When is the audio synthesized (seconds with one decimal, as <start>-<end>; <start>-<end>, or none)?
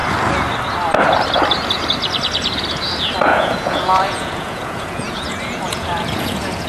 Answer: 3.3-6.7